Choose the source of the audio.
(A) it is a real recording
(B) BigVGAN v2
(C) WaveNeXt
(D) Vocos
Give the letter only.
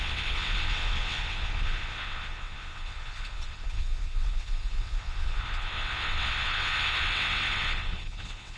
C